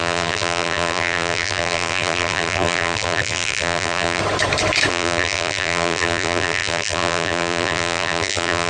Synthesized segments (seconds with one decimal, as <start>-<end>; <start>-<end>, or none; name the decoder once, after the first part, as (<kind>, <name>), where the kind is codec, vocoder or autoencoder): 0.0-4.2 (vocoder, BigVGAN v2); 4.9-8.7